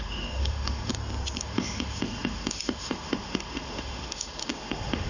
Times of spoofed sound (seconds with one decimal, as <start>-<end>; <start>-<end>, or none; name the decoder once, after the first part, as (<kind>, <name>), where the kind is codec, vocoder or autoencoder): 0.0-0.9 (autoencoder, DAC-VAE); 1.4-5.1